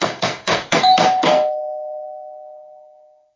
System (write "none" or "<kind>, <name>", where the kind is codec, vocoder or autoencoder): codec, SNAC